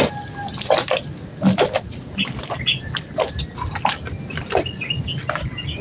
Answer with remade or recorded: recorded